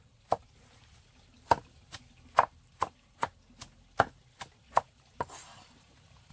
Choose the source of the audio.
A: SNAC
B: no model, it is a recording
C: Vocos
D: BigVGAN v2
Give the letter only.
B